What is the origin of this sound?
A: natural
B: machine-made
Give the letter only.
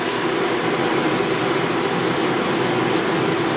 A